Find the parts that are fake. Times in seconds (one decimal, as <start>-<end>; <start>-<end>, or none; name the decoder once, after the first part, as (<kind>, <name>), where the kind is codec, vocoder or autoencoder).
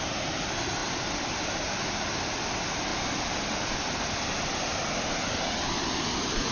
none